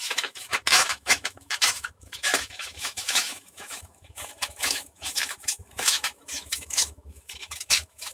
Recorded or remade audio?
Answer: remade